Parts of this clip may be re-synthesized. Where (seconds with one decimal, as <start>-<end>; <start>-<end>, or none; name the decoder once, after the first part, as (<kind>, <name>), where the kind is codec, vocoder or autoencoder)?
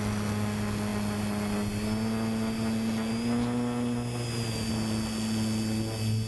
none